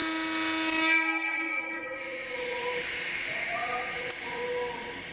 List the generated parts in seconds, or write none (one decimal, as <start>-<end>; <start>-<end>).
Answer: 1.3-2.6; 3.3-4.4